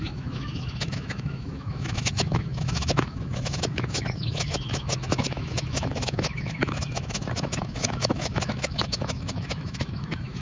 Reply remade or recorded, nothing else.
remade